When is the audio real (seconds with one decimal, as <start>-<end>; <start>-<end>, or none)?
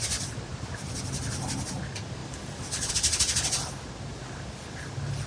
0.0-5.3